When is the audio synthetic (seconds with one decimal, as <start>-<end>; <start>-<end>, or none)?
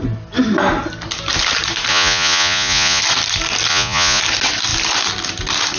1.9-3.0; 3.7-4.2